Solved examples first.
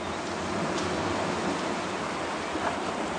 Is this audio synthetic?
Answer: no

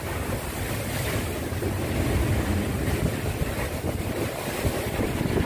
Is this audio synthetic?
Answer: no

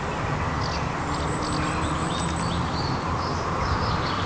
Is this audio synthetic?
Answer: no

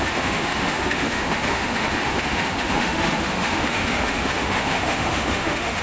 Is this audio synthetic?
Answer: yes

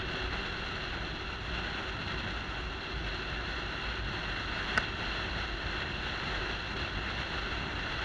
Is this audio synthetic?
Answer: no